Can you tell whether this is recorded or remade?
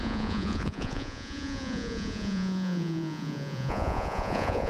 remade